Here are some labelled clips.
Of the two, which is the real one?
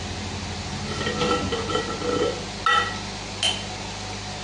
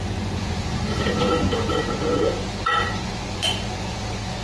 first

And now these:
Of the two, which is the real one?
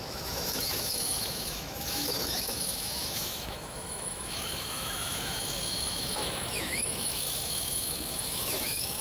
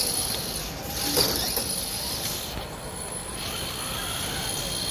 second